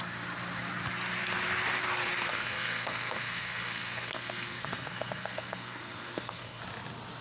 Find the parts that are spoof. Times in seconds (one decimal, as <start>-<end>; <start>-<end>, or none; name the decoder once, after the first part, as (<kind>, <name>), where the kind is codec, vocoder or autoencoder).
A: 2.3-6.6 (codec, SNAC)